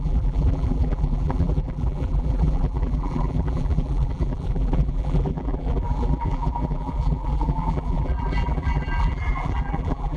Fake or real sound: fake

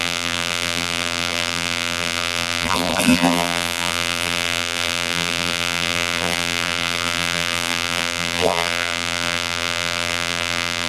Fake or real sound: fake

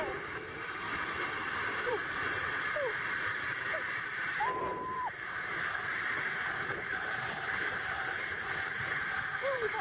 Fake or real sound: fake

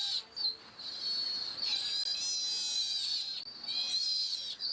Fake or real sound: real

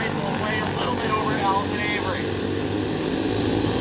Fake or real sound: real